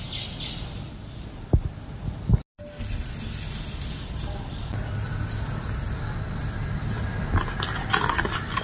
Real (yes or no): yes